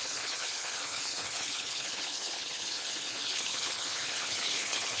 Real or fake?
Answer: fake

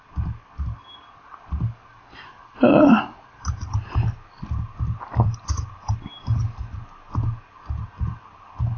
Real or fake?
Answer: real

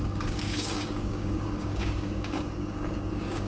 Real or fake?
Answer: fake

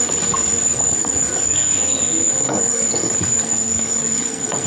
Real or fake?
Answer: fake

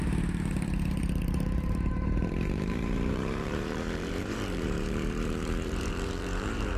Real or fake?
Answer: fake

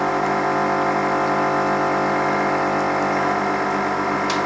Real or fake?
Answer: real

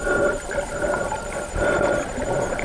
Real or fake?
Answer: real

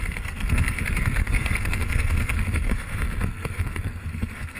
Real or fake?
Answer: fake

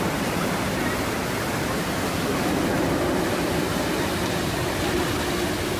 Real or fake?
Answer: real